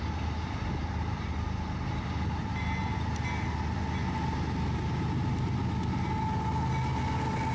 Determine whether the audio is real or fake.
real